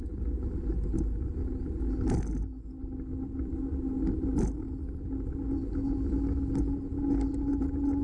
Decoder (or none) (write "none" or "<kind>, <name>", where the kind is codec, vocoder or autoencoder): none